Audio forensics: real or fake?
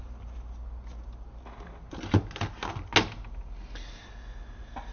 real